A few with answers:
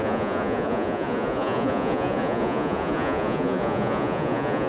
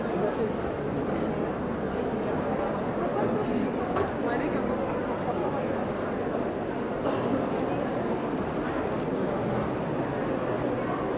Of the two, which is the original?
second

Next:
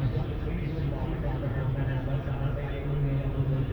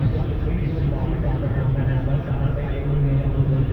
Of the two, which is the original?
first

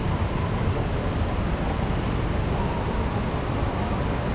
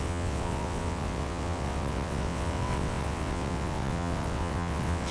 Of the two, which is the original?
first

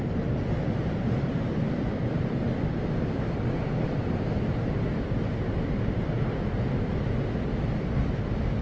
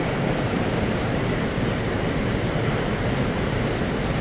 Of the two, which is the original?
first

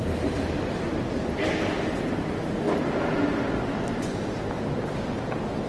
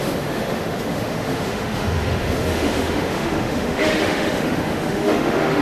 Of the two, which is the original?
first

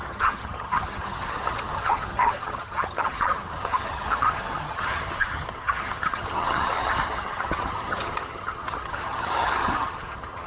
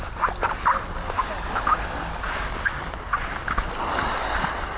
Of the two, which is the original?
second